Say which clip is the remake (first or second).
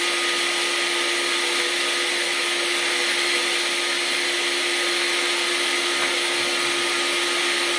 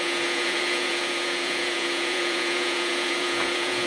second